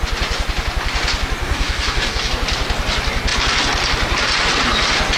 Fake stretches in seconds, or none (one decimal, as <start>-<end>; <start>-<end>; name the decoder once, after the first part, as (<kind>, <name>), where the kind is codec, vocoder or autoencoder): 1.4-2.3 (codec, DAC)